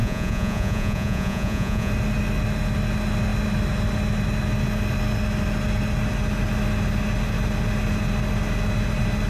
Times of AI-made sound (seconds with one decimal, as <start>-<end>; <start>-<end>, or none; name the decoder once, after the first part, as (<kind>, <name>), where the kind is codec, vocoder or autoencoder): 0.0-1.9 (vocoder, Vocos)